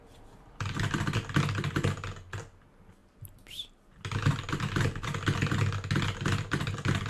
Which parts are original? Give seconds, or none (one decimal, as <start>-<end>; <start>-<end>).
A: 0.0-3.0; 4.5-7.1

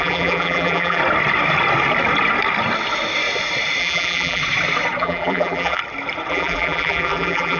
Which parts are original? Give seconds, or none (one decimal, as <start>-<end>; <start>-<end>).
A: 1.0-3.8; 4.4-5.0; 5.8-6.3

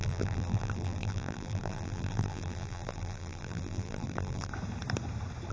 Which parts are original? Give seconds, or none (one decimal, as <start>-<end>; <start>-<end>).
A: 4.5-5.5